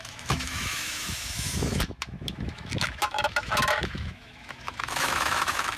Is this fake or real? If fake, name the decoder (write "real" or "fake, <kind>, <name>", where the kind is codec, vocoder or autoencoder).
fake, autoencoder, DAC-VAE